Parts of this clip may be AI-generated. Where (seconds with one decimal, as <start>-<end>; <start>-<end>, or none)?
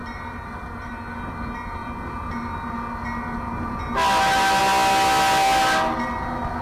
none